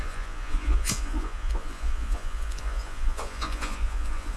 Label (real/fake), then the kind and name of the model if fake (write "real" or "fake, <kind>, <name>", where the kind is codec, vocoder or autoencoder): fake, vocoder, Vocos